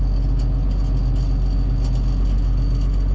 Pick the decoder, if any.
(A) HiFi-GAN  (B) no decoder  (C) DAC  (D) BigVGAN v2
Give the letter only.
B